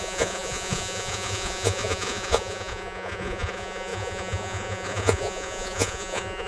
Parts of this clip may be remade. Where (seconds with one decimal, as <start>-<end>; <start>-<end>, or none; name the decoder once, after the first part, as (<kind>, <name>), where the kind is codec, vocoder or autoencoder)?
0.0-6.5 (vocoder, Vocos)